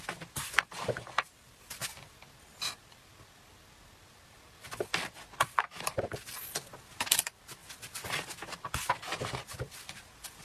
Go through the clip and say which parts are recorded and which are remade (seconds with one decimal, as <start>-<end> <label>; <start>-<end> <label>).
0.0-10.4 remade